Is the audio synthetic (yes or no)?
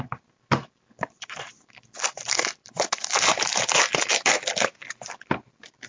no